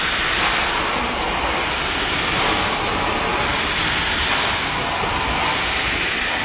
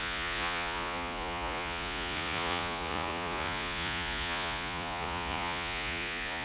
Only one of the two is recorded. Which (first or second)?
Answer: first